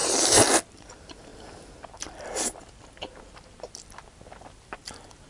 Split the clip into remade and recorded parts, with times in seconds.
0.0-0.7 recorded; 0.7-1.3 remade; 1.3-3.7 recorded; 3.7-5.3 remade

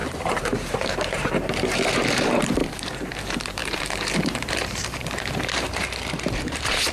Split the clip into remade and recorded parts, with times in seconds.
0.0-6.9 remade